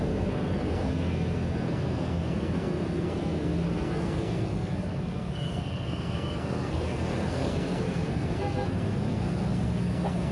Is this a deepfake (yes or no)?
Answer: yes